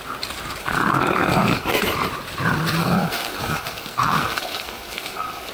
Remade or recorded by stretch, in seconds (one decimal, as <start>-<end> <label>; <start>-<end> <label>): 0.0-0.6 recorded; 0.6-1.8 remade; 1.8-2.8 recorded; 2.8-5.5 remade